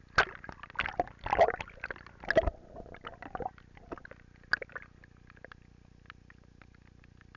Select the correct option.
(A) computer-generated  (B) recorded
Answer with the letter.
B